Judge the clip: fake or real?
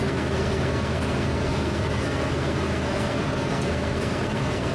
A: fake